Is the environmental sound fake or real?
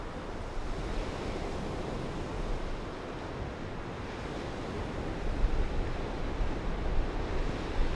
real